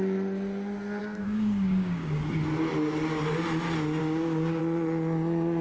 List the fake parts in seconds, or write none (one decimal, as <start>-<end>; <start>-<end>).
1.0-2.2; 4.0-4.6